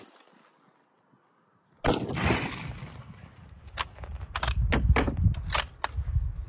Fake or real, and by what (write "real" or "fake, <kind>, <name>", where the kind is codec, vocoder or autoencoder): real